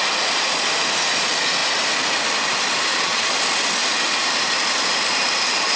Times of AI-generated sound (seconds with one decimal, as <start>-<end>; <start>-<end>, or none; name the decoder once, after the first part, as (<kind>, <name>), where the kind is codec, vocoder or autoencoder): 2.9-3.4 (vocoder, Vocos)